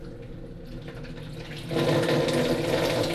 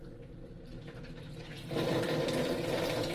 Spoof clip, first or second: second